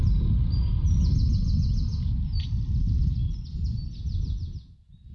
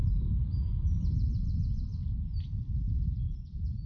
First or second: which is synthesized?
second